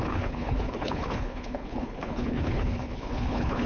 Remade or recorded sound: remade